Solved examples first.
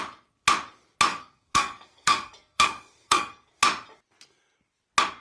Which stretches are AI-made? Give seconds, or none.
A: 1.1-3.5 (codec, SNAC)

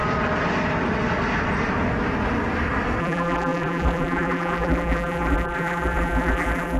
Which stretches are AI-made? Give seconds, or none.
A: 3.0-6.8 (vocoder, BigVGAN v2)

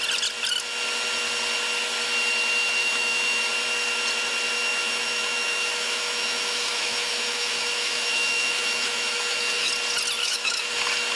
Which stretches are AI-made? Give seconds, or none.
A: 2.8-3.4 (autoencoder, DAC-VAE); 4.7-9.7; 10.2-10.7

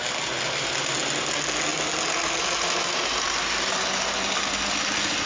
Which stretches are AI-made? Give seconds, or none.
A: none

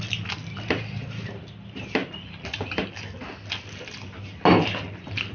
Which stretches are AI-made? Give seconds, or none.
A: none

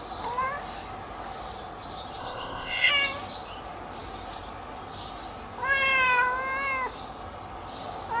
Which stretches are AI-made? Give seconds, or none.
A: 2.2-2.9 (codec, ZipCodec)

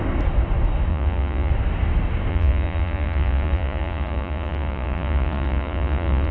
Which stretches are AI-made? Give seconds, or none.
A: 0.9-1.5 (vocoder, Vocos); 2.3-6.3